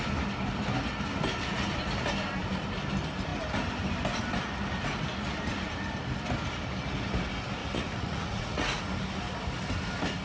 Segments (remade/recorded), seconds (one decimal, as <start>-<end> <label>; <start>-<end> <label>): 0.0-7.6 recorded; 7.6-8.8 remade; 8.8-10.2 recorded

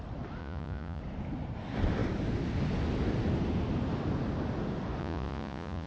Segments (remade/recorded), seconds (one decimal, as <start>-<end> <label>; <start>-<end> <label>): 0.0-0.4 recorded; 0.4-1.0 remade; 1.0-5.0 recorded; 5.0-5.9 remade

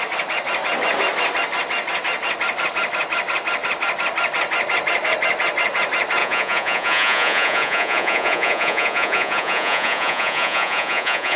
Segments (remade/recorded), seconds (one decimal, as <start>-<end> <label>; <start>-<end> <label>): 0.0-6.2 recorded; 6.2-11.4 remade

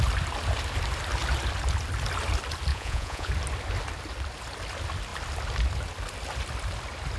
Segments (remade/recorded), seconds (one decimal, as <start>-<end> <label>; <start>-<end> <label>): 0.0-2.7 recorded; 2.7-3.3 remade; 3.3-7.2 recorded

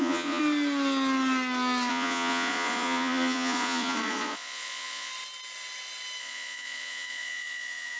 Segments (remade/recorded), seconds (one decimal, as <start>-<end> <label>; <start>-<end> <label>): 0.0-0.4 remade; 0.4-1.9 recorded; 1.9-5.1 remade; 5.1-6.2 recorded; 6.2-8.0 remade